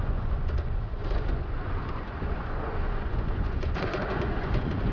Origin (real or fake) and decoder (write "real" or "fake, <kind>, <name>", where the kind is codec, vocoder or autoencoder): fake, vocoder, Vocos